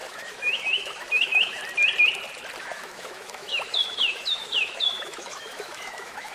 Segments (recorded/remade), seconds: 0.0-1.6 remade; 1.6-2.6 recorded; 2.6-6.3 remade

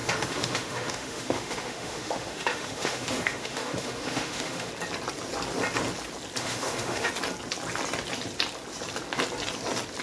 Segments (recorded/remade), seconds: 0.0-4.7 remade; 4.7-6.4 recorded; 6.4-7.1 remade; 7.1-10.0 recorded

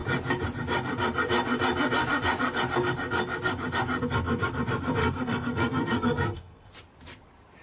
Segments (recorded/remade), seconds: 0.0-5.0 recorded; 5.0-6.7 remade; 6.7-7.6 recorded